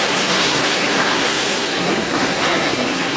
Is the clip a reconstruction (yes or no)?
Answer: yes